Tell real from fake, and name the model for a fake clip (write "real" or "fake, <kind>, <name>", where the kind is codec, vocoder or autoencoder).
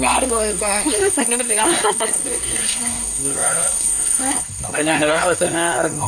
fake, codec, SNAC